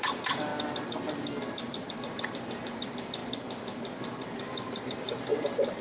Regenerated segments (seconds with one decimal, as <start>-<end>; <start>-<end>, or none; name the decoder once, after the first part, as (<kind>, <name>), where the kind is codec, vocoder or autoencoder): 0.0-0.5 (vocoder, BigVGAN v2); 1.9-3.2; 4.8-5.3

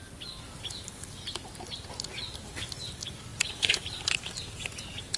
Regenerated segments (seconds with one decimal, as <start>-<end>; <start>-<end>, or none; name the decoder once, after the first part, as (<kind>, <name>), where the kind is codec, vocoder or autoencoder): 3.3-4.0 (vocoder, BigVGAN v2)